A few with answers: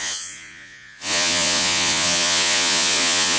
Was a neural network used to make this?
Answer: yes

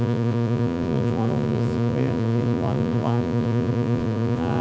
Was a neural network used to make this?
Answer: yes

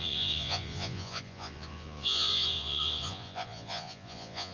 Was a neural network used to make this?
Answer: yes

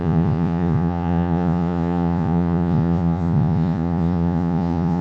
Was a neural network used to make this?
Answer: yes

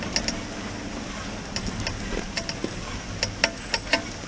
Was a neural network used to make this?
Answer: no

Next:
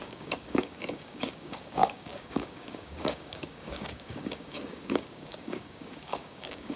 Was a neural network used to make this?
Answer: yes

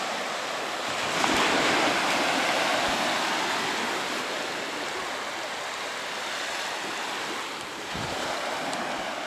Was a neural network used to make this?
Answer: no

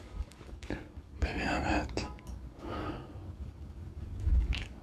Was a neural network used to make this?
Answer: yes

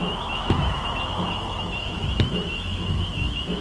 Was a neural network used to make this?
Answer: yes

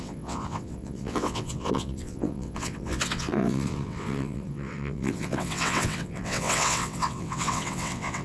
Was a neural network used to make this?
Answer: yes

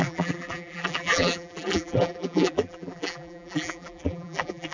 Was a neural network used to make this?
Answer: yes